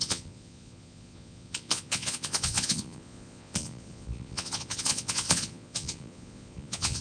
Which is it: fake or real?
fake